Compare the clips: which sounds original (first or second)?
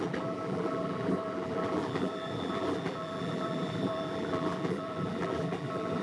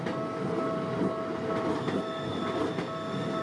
second